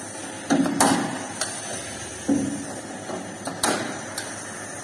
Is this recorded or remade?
recorded